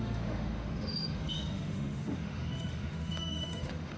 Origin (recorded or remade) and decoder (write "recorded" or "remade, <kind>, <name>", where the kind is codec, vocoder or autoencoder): remade, autoencoder, DAC-VAE